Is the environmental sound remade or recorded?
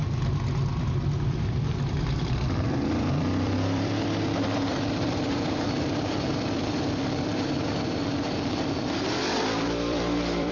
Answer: remade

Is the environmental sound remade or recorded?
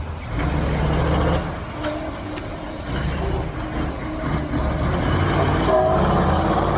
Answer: recorded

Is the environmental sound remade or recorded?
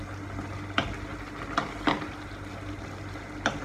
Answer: recorded